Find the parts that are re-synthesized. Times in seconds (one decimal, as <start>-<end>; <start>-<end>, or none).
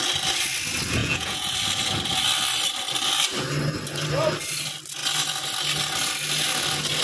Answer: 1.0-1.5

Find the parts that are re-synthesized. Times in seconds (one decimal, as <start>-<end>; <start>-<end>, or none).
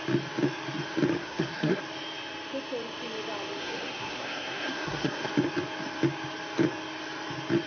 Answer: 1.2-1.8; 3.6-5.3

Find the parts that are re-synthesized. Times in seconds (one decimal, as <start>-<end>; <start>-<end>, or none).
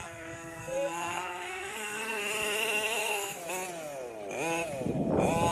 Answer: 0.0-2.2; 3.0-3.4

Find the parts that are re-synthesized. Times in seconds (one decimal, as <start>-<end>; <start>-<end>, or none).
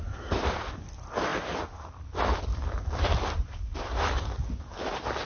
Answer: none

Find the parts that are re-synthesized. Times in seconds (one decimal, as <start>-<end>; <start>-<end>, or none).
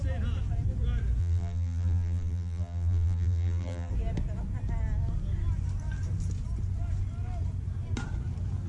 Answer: 1.2-3.9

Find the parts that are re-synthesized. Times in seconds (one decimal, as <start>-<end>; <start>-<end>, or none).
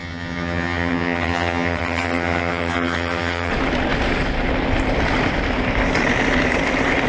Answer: 0.0-3.5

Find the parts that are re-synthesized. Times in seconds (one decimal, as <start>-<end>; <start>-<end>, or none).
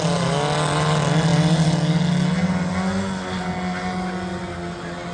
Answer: none